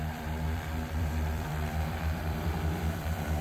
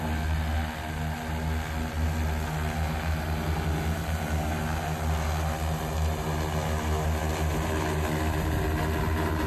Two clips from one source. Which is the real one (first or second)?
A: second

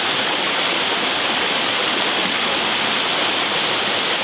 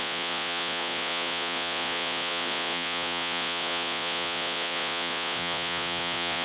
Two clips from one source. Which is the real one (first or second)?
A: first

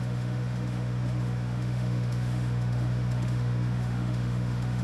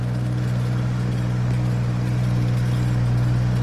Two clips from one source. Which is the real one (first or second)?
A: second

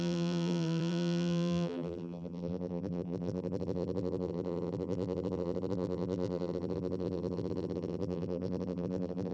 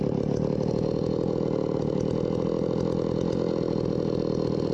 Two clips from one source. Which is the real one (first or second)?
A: second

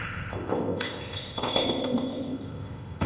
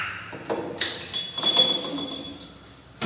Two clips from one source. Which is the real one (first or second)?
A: second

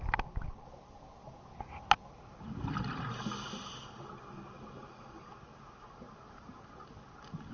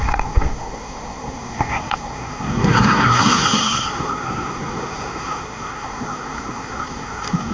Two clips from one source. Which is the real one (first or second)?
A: first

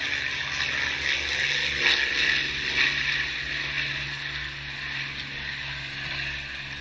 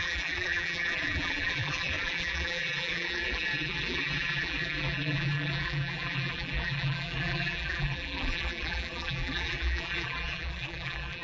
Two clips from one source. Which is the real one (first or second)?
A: first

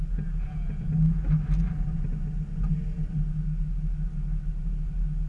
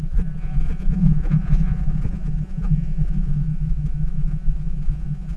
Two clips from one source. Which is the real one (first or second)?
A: first